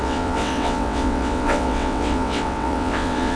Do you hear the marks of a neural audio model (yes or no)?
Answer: yes